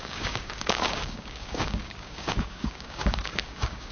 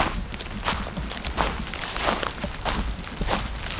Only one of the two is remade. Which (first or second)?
first